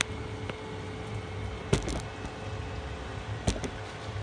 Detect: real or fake real